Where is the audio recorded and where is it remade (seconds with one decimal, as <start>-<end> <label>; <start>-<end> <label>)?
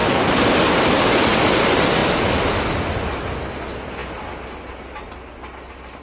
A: 0.0-6.0 recorded